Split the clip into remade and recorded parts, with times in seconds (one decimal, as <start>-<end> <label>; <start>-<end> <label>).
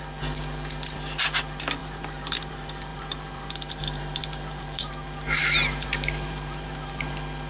0.0-1.8 recorded; 1.8-2.5 remade; 2.5-2.9 recorded; 2.9-4.9 remade; 4.9-5.4 recorded; 5.4-7.1 remade; 7.1-7.5 recorded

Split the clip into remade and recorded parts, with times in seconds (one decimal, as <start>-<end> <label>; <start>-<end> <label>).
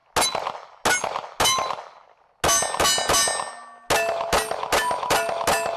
0.0-5.8 recorded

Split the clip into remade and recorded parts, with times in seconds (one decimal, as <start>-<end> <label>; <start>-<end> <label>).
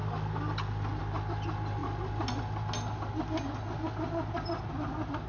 0.0-1.0 remade; 1.0-5.3 recorded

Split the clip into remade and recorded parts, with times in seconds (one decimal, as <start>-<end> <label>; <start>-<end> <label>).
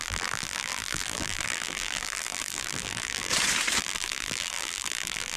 0.0-3.3 remade; 3.3-3.8 recorded; 3.8-5.4 remade